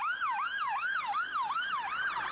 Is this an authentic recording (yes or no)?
no